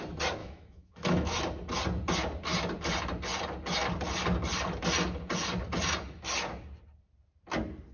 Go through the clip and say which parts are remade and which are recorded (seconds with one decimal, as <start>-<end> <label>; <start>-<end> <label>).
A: 0.0-0.4 recorded; 0.4-1.4 remade; 1.4-7.9 recorded